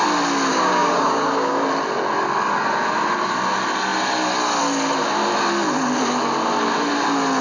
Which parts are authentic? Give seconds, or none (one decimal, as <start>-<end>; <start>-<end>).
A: 0.0-0.5; 1.6-7.4